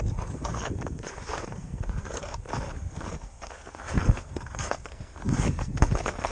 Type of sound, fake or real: fake